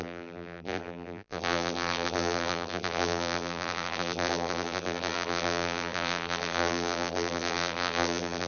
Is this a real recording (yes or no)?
no